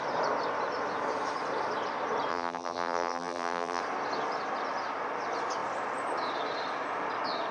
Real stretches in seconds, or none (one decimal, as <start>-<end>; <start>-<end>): 0.0-2.3; 3.8-7.5